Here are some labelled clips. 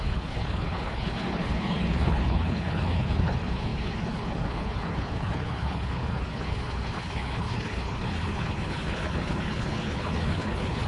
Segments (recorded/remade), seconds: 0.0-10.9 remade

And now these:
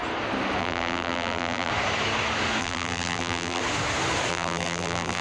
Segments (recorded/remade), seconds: 0.0-0.6 recorded; 0.6-1.7 remade; 1.7-2.6 recorded; 2.6-3.6 remade; 3.6-4.3 recorded; 4.3-5.2 remade

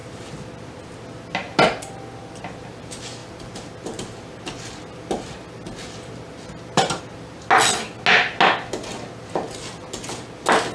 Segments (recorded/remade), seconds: 0.0-10.7 recorded

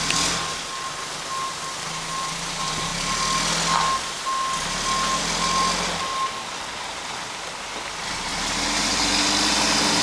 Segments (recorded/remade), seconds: 0.0-8.3 recorded; 8.3-9.0 remade; 9.0-10.0 recorded

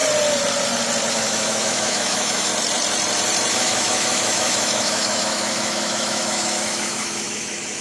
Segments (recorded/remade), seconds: 0.0-1.1 recorded; 1.1-2.5 remade; 2.5-3.5 recorded; 3.5-7.8 remade